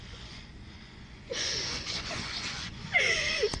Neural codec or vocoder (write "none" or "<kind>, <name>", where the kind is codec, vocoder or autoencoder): vocoder, Vocos